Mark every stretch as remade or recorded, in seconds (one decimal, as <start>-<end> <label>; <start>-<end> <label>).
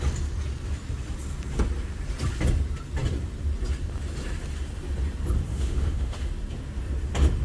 0.0-5.5 recorded; 5.5-6.3 remade; 6.3-7.4 recorded